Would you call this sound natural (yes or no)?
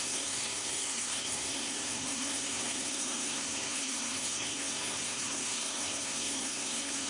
no